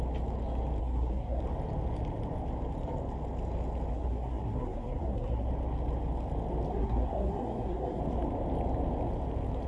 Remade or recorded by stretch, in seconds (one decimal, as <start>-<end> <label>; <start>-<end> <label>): 0.0-0.8 recorded; 0.8-1.4 remade; 1.4-3.9 recorded; 3.9-5.5 remade; 5.5-6.7 recorded; 6.7-8.0 remade; 8.0-9.7 recorded